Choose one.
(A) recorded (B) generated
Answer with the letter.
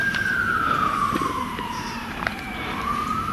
B